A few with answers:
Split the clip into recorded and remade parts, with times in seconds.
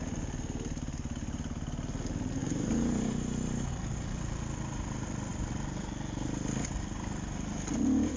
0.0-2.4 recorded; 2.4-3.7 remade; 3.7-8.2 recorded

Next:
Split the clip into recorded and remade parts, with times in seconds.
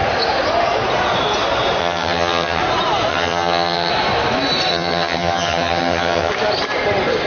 0.0-1.8 recorded; 1.8-2.6 remade; 2.6-3.1 recorded; 3.1-3.9 remade; 3.9-4.7 recorded; 4.7-6.3 remade; 6.3-7.3 recorded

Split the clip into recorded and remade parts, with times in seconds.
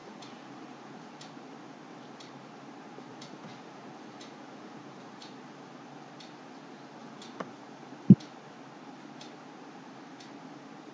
0.0-1.1 remade; 1.1-3.1 recorded; 3.1-5.7 remade; 5.7-7.0 recorded; 7.0-7.9 remade; 7.9-10.9 recorded